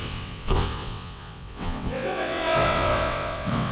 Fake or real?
fake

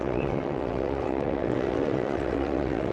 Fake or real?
fake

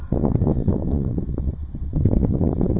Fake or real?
fake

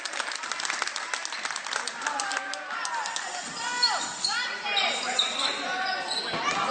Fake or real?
real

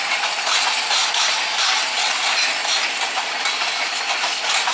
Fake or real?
real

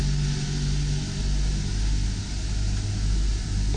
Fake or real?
real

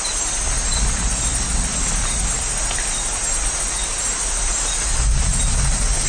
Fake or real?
real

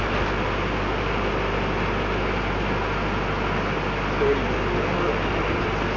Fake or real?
real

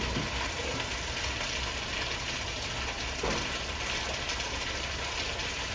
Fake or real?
real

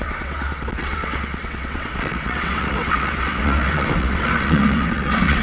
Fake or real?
fake